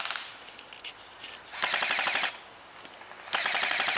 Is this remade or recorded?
recorded